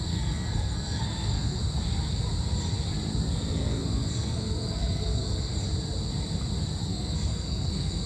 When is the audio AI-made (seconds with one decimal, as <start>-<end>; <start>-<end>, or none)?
0.0-1.6; 3.3-5.5; 6.8-8.1